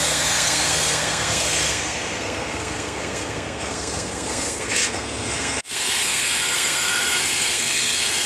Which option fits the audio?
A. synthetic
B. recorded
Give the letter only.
A